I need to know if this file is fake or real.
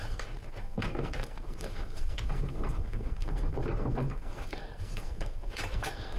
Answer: fake